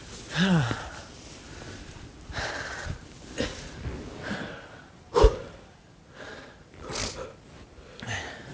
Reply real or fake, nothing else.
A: real